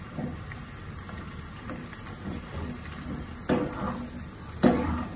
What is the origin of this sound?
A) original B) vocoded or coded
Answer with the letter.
A